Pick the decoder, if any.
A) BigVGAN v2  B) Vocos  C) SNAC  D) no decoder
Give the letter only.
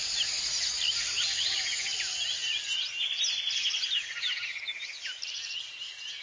D